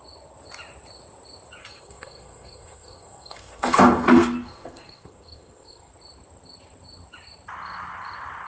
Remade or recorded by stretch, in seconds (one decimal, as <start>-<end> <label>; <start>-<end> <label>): 0.0-1.6 recorded; 1.6-5.9 remade; 5.9-8.5 recorded